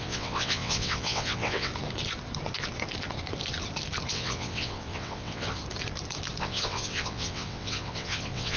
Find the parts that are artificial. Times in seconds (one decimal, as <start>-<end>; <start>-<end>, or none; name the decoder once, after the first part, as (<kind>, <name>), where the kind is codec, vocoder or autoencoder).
0.0-1.7 (vocoder, WaveNeXt); 4.1-5.6; 6.4-8.6